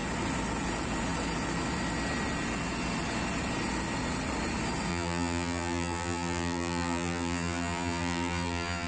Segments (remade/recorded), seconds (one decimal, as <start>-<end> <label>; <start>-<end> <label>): 0.0-4.9 recorded; 4.9-8.9 remade